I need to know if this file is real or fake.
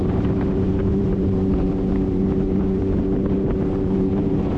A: fake